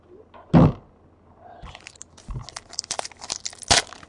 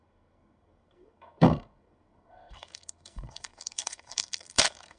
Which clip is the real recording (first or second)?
first